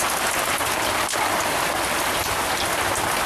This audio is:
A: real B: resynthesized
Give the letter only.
A